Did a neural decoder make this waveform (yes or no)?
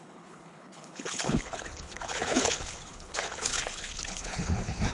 yes